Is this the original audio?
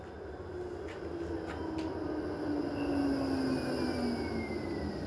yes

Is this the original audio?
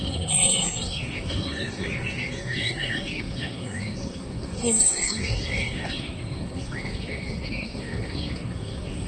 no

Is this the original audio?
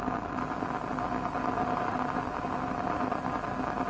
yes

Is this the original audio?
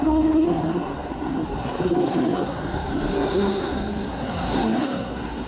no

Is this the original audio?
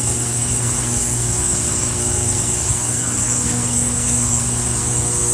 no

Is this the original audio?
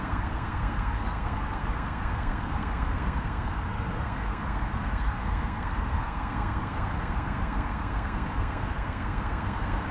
no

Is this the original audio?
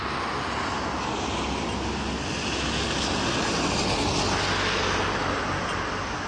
yes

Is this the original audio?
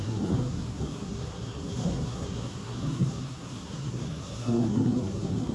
no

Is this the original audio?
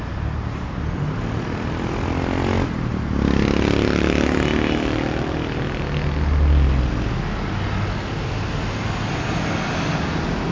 yes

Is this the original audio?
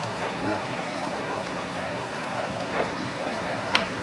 no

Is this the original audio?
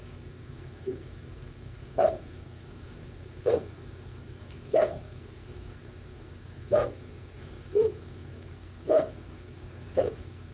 no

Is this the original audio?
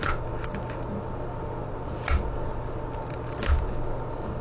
yes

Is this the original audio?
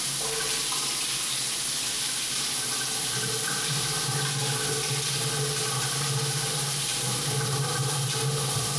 yes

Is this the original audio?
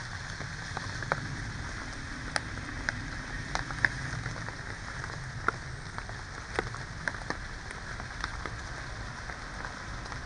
yes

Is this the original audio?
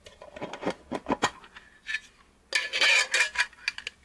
yes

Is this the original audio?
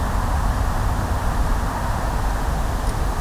yes